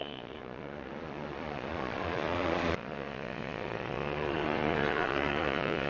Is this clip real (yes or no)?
no